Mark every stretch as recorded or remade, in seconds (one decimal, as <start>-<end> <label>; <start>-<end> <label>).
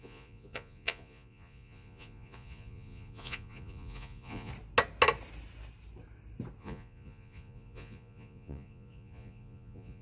0.0-4.5 remade; 4.5-6.6 recorded; 6.6-10.0 remade